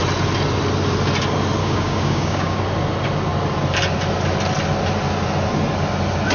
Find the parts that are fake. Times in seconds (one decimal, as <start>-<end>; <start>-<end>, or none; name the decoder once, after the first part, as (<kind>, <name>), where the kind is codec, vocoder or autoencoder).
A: 1.6-2.6 (codec, DAC)